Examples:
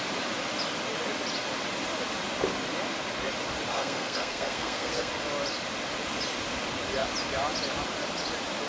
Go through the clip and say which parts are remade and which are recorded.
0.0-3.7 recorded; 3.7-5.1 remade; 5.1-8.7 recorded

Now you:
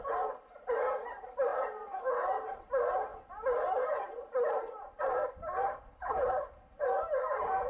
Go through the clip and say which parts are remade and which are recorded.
0.0-5.9 recorded; 5.9-6.5 remade; 6.5-7.7 recorded

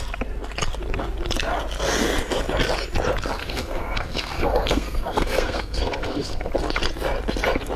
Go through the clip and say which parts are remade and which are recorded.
0.0-3.4 recorded; 3.4-6.5 remade; 6.5-7.8 recorded

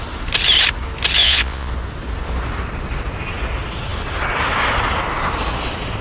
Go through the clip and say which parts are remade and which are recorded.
0.0-1.2 recorded; 1.2-1.7 remade; 1.7-6.0 recorded